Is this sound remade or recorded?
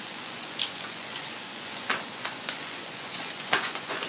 remade